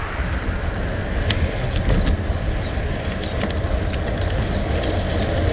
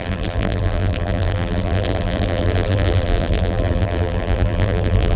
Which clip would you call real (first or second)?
first